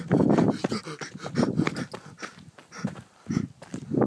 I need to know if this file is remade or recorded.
recorded